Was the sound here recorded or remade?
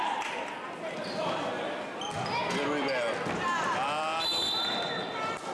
recorded